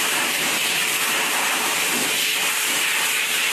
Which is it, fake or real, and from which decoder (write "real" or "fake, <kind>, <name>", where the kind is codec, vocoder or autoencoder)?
fake, vocoder, BigVGAN v2